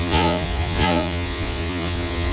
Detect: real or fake fake